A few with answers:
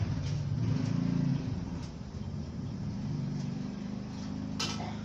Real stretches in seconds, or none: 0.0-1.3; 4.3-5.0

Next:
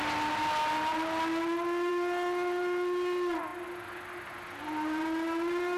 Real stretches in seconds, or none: 0.0-5.8